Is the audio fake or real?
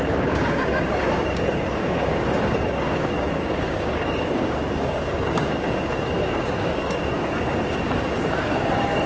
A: fake